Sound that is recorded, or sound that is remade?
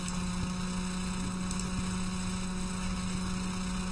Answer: recorded